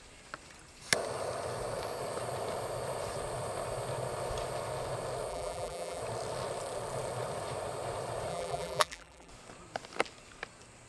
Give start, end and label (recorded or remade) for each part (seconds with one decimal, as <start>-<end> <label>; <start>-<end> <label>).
0.0-5.3 recorded; 5.3-6.0 remade; 6.0-8.3 recorded; 8.3-9.3 remade; 9.3-10.9 recorded